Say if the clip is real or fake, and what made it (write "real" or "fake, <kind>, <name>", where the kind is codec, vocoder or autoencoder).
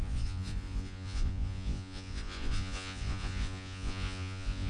fake, vocoder, Vocos